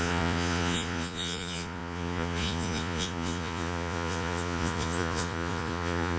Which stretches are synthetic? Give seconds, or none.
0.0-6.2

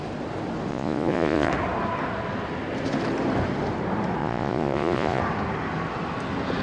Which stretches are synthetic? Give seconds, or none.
0.7-1.5; 4.2-5.2

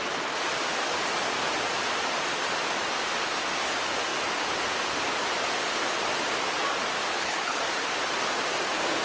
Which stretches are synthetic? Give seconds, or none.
7.1-7.6

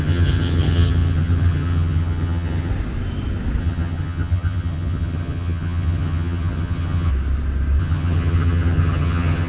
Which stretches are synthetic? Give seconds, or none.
0.0-2.7; 3.6-7.1; 7.8-9.5

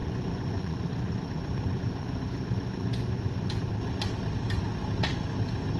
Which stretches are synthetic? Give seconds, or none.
0.0-3.5

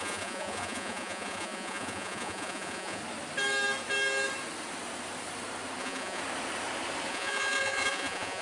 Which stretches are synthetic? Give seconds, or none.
0.0-3.0; 5.8-6.2; 7.1-8.4